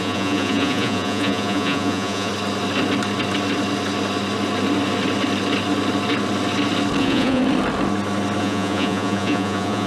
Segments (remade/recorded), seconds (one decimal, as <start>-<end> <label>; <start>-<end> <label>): 0.0-2.3 remade; 2.3-7.0 recorded; 7.0-7.4 remade; 7.4-8.4 recorded; 8.4-9.9 remade